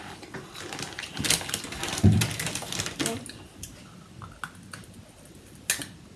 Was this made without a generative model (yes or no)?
yes